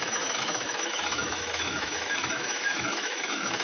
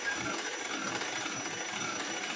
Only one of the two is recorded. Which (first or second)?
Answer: second